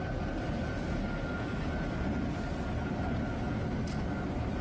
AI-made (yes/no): no